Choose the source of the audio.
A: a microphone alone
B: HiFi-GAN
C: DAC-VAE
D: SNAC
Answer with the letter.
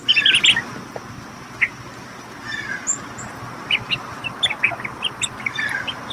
A